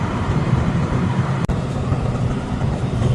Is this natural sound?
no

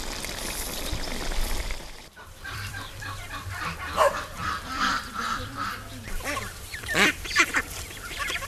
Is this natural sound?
no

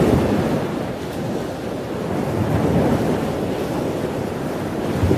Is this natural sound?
no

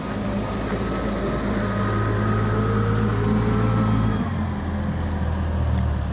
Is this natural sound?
yes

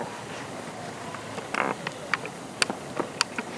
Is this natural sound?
yes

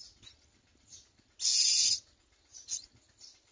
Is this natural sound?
yes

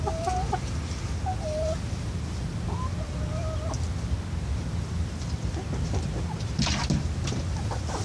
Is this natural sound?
yes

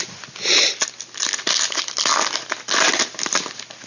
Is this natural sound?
yes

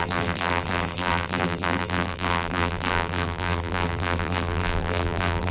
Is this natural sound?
no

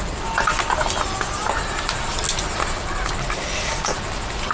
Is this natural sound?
yes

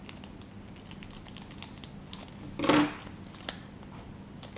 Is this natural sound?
yes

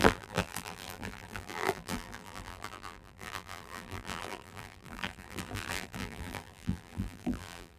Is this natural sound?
no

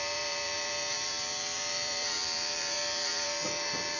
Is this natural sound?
no